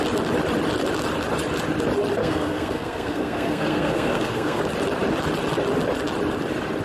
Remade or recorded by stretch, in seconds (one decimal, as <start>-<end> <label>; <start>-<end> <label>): 0.0-2.2 recorded; 2.2-4.6 remade; 4.6-6.8 recorded